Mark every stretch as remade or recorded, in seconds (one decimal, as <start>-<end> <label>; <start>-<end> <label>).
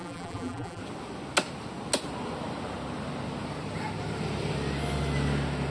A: 0.0-0.8 remade; 0.8-5.7 recorded